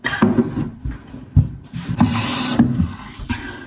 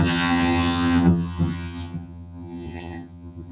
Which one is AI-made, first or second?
second